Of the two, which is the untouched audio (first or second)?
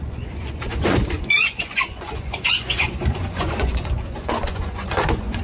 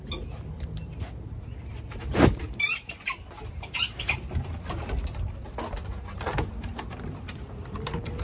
second